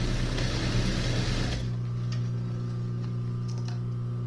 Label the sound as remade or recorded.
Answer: recorded